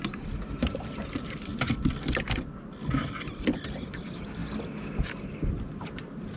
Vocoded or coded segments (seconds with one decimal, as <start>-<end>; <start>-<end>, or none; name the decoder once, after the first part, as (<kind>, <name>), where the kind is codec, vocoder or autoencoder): 0.0-1.5 (vocoder, BigVGAN v2); 3.8-4.4; 5.0-6.4